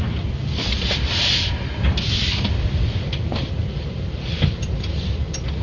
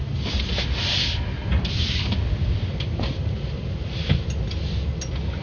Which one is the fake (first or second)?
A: first